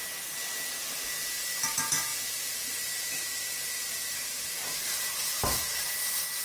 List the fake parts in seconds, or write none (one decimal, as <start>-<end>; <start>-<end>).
0.0-1.1; 2.1-5.9